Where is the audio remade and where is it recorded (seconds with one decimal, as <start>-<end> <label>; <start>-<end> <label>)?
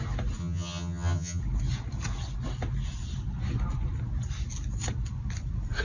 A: 0.0-0.4 recorded; 0.4-1.4 remade; 1.4-5.8 recorded